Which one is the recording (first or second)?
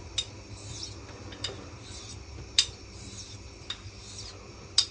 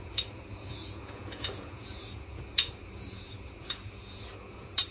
first